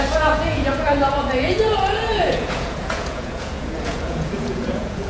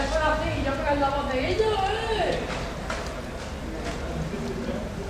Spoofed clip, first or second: first